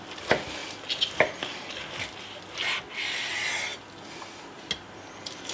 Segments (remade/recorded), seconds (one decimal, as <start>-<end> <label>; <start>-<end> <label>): 0.0-5.5 recorded